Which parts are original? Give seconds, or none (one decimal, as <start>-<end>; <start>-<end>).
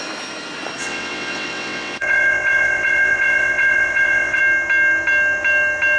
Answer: 0.0-0.8; 4.4-6.0